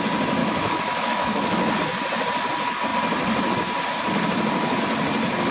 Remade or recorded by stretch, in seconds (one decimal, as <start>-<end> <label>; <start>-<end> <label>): 0.0-0.4 recorded; 0.4-1.7 remade; 1.7-5.5 recorded